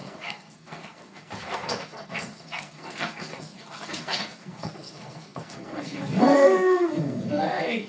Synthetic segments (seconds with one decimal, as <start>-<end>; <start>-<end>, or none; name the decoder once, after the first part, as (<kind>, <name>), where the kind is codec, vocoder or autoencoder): 0.0-7.9 (codec, SNAC)